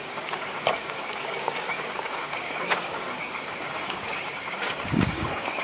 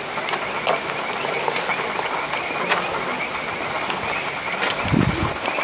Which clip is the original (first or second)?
second